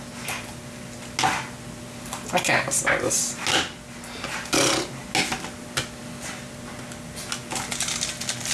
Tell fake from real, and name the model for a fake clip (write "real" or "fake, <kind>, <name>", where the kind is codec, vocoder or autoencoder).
real